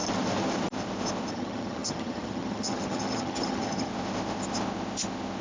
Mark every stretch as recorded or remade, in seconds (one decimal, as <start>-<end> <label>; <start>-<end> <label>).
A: 0.0-1.3 recorded; 1.3-3.9 remade; 3.9-5.4 recorded